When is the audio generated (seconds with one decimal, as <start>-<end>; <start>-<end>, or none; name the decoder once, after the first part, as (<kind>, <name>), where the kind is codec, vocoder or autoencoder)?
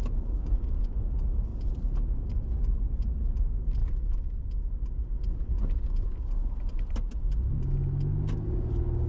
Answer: none